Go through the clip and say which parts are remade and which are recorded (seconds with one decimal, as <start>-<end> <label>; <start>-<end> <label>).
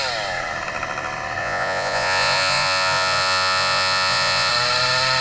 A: 0.0-1.4 recorded; 1.4-4.5 remade; 4.5-5.2 recorded